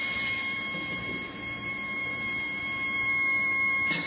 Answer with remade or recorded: remade